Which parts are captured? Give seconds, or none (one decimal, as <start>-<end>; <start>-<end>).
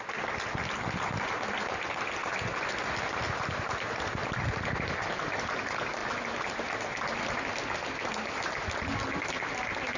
0.0-10.0